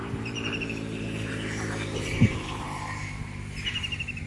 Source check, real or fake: fake